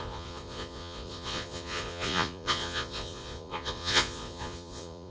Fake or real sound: fake